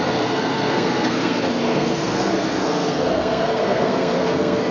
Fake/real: fake